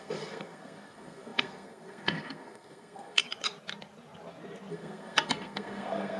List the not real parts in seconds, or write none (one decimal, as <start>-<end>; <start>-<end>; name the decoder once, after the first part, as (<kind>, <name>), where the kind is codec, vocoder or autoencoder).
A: 0.0-3.2 (codec, SNAC); 4.7-6.2